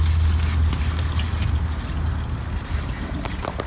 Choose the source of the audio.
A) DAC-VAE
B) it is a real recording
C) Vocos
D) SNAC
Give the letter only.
B